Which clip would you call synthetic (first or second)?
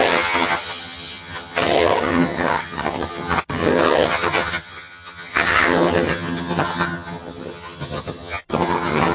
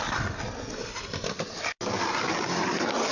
first